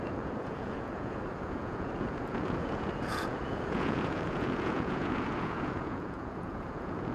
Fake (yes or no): yes